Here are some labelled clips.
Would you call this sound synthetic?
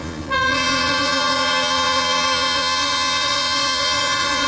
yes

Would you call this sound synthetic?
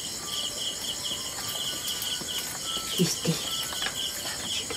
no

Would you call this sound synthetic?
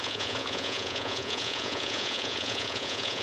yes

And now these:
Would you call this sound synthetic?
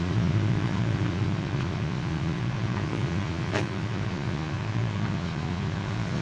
yes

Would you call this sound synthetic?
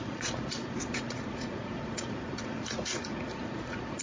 yes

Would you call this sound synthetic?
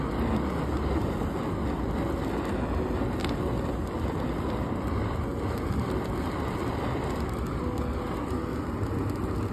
no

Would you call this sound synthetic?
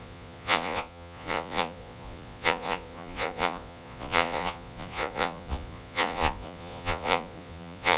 yes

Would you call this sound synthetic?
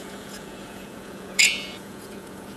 yes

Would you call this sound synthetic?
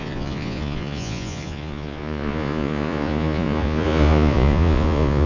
yes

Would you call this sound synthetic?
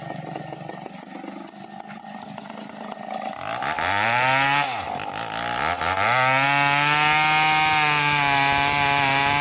no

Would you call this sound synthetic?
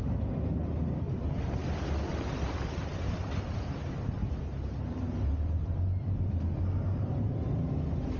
no